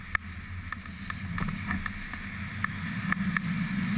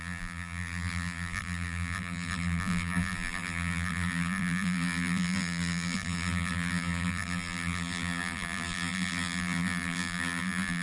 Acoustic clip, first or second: first